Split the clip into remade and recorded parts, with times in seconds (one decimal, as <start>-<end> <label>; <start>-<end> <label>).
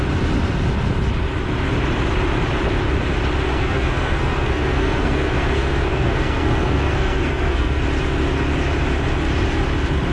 0.0-3.5 recorded; 3.5-7.8 remade; 7.8-10.1 recorded